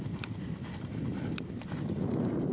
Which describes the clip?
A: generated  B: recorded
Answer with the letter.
B